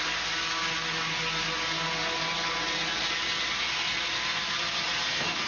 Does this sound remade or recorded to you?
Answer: recorded